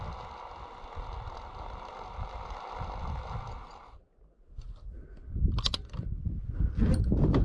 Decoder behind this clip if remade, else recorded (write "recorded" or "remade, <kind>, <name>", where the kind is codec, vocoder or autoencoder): recorded